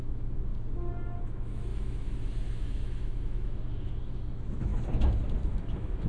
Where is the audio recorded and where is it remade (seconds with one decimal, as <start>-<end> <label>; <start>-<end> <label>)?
0.0-0.5 remade; 0.5-1.2 recorded; 1.2-4.7 remade; 4.7-5.4 recorded; 5.4-6.1 remade

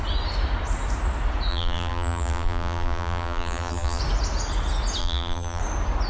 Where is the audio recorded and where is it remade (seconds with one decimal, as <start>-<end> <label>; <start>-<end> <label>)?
0.0-1.5 recorded; 1.5-4.0 remade; 4.0-5.0 recorded; 5.0-5.6 remade; 5.6-6.1 recorded

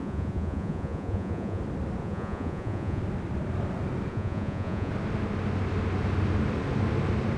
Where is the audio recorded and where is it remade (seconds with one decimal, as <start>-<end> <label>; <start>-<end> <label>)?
0.0-1.6 remade; 1.6-2.0 recorded; 2.0-3.0 remade; 3.0-4.1 recorded; 4.1-4.9 remade; 4.9-7.4 recorded

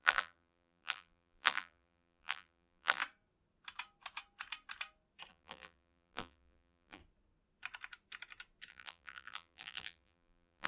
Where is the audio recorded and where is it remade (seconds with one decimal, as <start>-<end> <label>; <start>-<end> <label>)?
0.0-3.0 remade; 3.0-5.3 recorded; 5.3-7.0 remade; 7.0-8.7 recorded; 8.7-10.7 remade

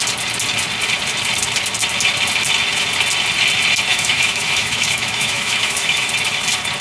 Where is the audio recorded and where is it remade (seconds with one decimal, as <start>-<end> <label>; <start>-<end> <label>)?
0.0-3.9 recorded; 3.9-6.1 remade; 6.1-6.8 recorded

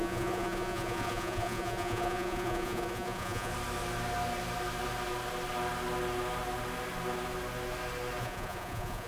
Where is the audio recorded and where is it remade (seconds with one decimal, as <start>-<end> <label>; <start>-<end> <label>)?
0.0-3.5 remade; 3.5-8.2 recorded; 8.2-9.1 remade

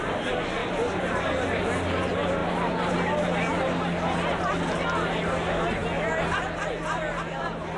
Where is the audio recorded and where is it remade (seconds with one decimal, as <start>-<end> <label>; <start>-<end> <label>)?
0.0-7.8 recorded